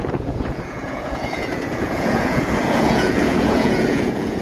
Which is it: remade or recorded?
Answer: remade